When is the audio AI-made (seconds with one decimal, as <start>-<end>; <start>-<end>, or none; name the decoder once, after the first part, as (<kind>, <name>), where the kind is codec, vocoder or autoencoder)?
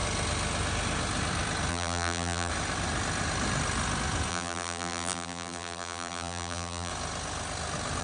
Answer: 1.7-2.5 (vocoder, BigVGAN v2); 4.3-6.9